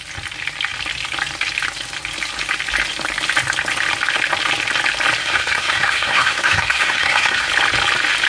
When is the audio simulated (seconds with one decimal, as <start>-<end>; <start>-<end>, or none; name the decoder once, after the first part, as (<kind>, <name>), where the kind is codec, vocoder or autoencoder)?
5.2-7.5 (codec, SNAC)